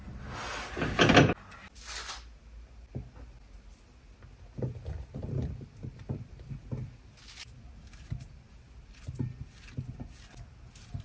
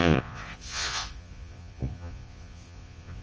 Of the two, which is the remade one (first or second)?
second